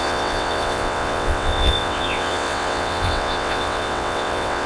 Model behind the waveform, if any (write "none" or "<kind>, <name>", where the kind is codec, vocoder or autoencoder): vocoder, WaveNeXt